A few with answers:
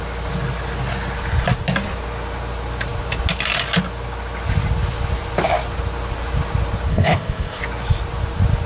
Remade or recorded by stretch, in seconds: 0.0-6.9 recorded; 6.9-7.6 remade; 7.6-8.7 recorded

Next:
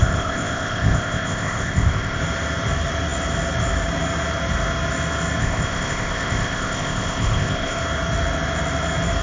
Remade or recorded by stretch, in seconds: 0.0-2.2 remade; 2.2-5.4 recorded; 5.4-7.8 remade; 7.8-9.2 recorded

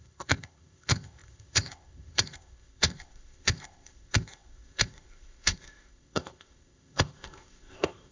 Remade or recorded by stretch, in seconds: 0.0-8.1 remade

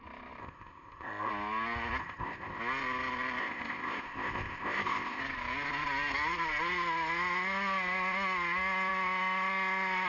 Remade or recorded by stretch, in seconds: 0.0-0.4 recorded; 0.4-1.3 remade; 1.3-2.0 recorded; 2.0-2.6 remade; 2.6-3.4 recorded; 3.4-5.2 remade; 5.2-10.1 recorded

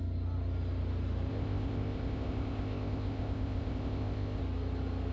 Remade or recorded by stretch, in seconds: 0.0-1.3 recorded; 1.3-4.4 remade; 4.4-5.1 recorded

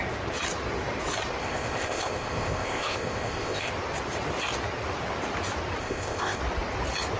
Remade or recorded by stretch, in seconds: 0.0-1.4 recorded; 1.4-3.7 remade; 3.7-5.8 recorded; 5.8-6.4 remade; 6.4-7.2 recorded

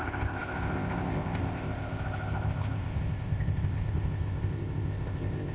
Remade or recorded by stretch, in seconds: 0.0-5.5 remade

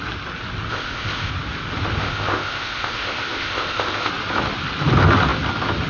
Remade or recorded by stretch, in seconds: 0.0-0.7 recorded; 0.7-1.3 remade; 1.3-2.0 recorded; 2.0-4.1 remade; 4.1-5.9 recorded